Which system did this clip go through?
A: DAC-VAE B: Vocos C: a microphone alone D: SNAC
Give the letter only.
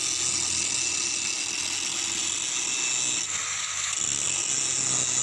C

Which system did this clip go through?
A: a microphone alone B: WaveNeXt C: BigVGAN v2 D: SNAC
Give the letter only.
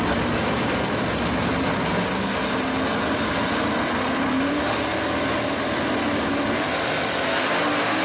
A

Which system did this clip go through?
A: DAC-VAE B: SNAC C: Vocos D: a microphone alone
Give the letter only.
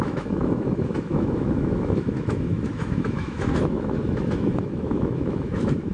A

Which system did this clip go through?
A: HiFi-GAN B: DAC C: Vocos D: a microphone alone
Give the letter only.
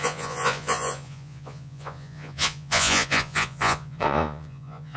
C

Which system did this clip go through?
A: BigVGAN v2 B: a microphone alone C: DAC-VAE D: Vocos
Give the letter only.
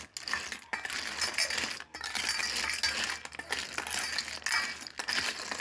B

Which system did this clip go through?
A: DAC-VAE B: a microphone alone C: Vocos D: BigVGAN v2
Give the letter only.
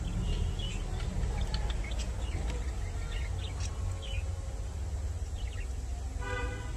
B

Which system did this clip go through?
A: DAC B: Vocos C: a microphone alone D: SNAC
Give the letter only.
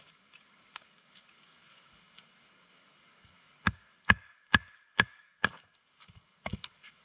A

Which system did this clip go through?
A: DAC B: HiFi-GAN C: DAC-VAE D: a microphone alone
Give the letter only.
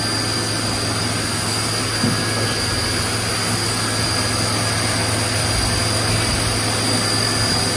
D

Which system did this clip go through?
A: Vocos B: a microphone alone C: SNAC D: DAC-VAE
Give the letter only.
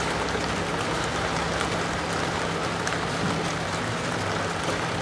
B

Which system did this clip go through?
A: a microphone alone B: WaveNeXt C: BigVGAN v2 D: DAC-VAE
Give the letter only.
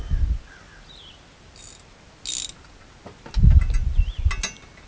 A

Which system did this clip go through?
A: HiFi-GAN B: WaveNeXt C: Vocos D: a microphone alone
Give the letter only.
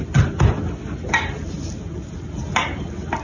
D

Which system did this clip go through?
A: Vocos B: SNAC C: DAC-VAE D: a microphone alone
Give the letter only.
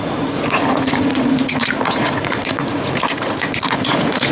A